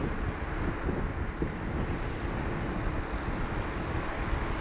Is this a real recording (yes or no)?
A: yes